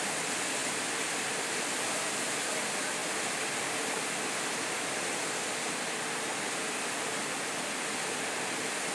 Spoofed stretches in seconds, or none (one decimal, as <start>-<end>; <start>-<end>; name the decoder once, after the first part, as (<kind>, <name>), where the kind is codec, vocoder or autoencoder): none